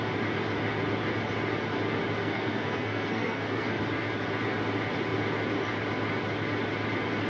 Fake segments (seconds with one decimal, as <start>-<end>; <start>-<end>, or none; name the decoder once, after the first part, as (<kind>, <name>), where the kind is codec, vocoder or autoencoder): 2.2-3.8 (codec, SNAC)

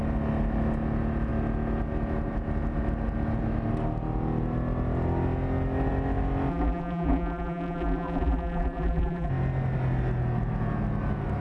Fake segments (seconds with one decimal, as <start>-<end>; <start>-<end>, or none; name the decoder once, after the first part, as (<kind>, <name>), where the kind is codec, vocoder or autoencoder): 6.5-9.3 (vocoder, BigVGAN v2)

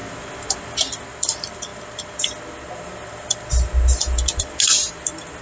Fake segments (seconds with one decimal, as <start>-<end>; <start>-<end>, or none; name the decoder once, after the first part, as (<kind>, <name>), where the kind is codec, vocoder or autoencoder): none

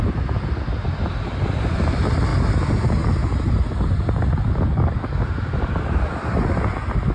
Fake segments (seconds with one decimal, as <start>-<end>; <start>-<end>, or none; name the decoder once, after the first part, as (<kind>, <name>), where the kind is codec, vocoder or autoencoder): 4.7-5.2 (codec, DAC)

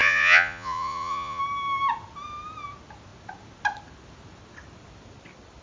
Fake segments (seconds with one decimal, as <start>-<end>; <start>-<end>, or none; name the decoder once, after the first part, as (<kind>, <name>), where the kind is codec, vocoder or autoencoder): 0.0-1.4 (vocoder, Vocos)

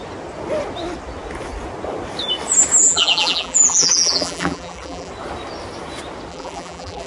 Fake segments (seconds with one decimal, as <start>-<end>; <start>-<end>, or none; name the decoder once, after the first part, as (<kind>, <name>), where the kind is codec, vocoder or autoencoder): 2.8-5.1 (vocoder, BigVGAN v2); 6.3-7.1

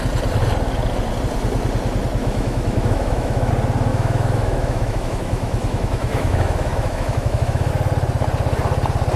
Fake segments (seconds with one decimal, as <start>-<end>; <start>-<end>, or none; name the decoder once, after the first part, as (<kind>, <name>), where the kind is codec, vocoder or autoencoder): 2.2-3.5 (autoencoder, DAC-VAE); 3.9-7.7